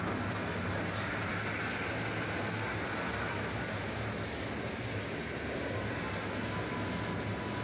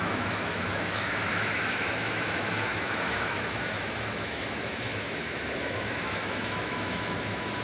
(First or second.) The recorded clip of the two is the first